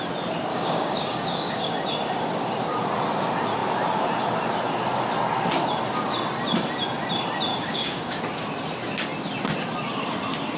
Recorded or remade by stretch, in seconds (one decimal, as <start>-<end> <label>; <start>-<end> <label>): 0.0-0.5 recorded; 0.5-1.7 remade; 1.7-7.5 recorded; 7.5-8.2 remade; 8.2-10.6 recorded